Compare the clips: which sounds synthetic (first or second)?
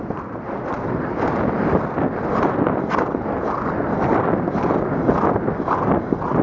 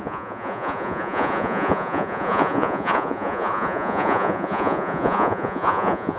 second